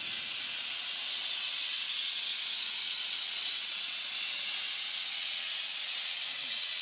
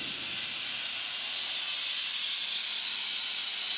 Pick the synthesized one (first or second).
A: first